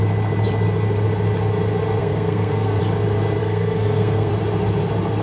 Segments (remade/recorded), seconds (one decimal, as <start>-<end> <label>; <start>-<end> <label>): 0.0-2.0 recorded; 2.0-2.8 remade; 2.8-3.4 recorded; 3.4-4.3 remade; 4.3-5.2 recorded